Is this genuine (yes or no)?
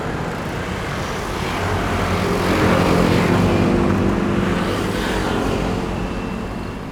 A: yes